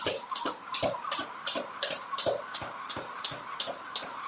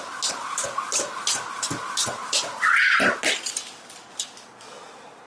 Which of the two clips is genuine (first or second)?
second